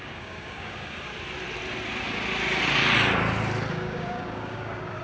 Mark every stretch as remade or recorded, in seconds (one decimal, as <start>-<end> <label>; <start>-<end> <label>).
0.0-1.1 remade; 1.1-3.7 recorded; 3.7-5.0 remade